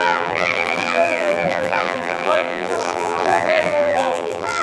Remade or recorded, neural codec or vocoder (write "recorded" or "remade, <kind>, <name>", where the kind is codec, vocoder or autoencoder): remade, vocoder, BigVGAN v2